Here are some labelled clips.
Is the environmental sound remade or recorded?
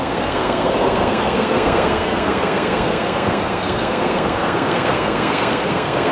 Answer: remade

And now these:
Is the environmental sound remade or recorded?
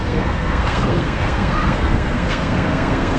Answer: remade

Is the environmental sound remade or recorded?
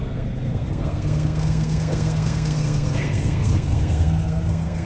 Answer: remade